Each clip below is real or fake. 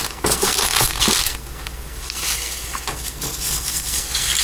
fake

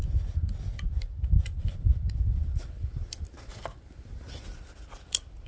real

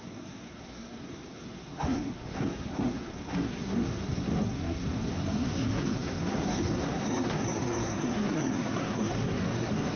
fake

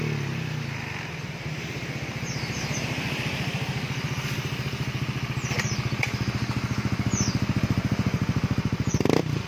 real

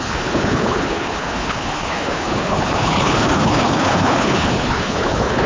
fake